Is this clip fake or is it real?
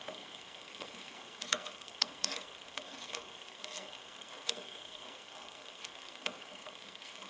fake